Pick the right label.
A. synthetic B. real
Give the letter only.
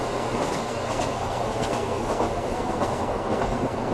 A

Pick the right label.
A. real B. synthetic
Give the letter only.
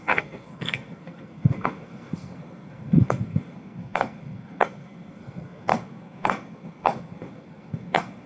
B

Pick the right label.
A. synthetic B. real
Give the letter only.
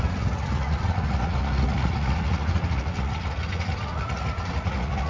A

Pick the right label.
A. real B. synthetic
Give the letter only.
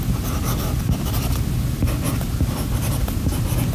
A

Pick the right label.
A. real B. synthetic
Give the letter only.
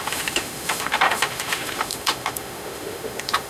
B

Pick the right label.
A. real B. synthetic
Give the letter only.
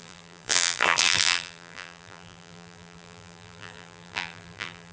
B